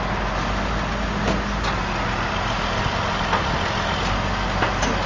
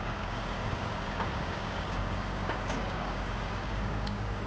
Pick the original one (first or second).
first